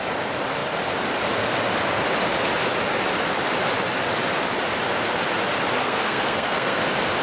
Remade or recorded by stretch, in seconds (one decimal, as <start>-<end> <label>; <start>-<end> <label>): 0.0-5.8 recorded; 5.8-6.8 remade; 6.8-7.2 recorded

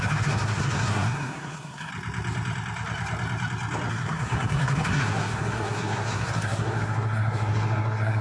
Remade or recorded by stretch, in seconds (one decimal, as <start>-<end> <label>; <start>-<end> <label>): 0.0-1.9 remade; 1.9-3.9 recorded; 3.9-8.2 remade